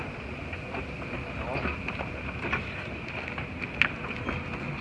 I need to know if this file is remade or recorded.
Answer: recorded